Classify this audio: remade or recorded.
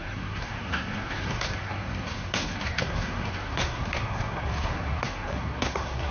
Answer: remade